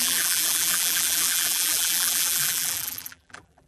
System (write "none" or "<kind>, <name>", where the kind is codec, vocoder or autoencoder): vocoder, BigVGAN v2